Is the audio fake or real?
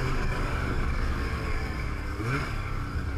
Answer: fake